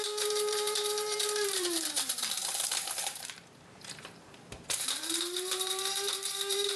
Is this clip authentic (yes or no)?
no